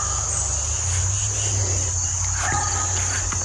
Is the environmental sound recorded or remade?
recorded